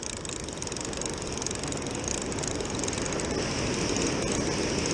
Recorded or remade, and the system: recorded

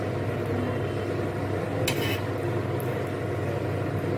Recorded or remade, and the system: recorded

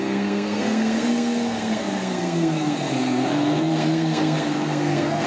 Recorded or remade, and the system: remade, codec, SNAC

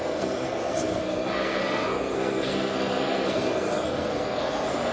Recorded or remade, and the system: remade, codec, SNAC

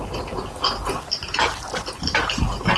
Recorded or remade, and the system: recorded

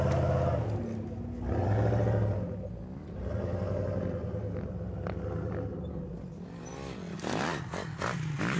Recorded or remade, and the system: recorded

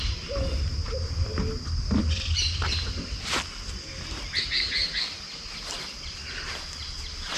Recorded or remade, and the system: recorded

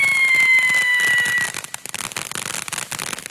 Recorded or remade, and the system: recorded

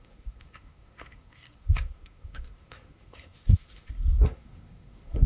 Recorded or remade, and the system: remade, codec, SNAC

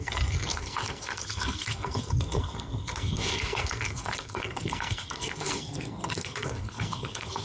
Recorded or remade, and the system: remade, codec, SNAC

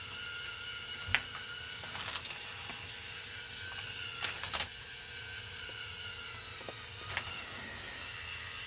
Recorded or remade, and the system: recorded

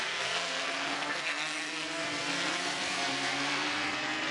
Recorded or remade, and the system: remade, codec, SNAC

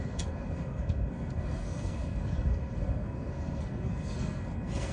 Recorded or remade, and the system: remade, codec, SNAC